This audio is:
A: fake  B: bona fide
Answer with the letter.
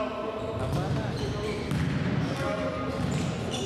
B